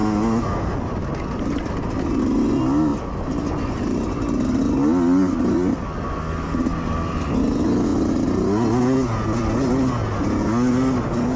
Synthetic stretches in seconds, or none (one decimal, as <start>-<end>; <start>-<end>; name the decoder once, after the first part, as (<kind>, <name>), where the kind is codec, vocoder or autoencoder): none